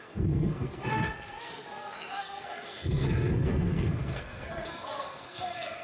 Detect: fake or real fake